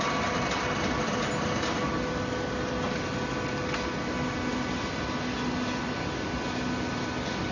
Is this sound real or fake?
real